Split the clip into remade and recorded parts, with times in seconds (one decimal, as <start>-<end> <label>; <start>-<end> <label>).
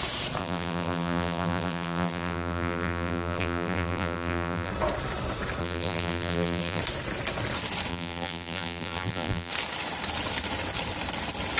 0.0-0.4 recorded; 0.4-4.7 remade; 4.7-5.6 recorded; 5.6-6.8 remade; 6.8-7.9 recorded; 7.9-9.5 remade; 9.5-11.6 recorded